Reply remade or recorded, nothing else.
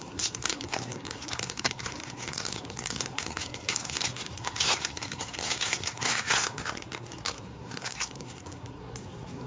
remade